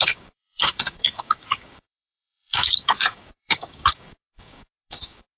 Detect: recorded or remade remade